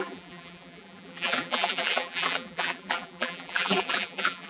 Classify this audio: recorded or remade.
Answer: remade